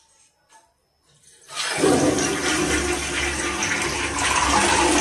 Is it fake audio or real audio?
real